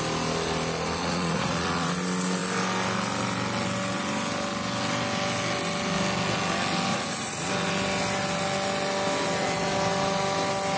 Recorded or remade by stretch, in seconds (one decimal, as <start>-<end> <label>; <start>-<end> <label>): 0.0-1.0 recorded; 1.0-1.9 remade; 1.9-6.9 recorded; 6.9-7.5 remade; 7.5-10.8 recorded